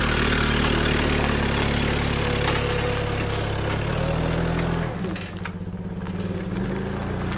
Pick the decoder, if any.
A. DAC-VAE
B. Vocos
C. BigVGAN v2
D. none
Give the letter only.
D